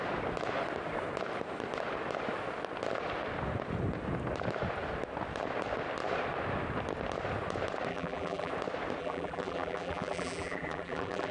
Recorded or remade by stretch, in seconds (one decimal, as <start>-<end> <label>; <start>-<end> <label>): 0.0-7.9 recorded; 7.9-8.5 remade; 8.5-9.0 recorded; 9.0-11.3 remade